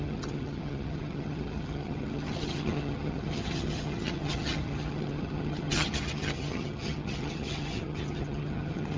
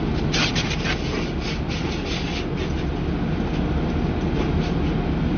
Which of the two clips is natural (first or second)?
second